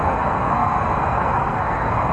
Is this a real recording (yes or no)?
no